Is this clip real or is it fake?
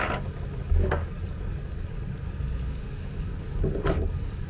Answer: fake